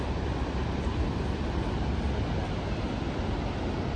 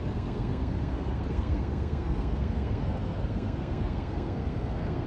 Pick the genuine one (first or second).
first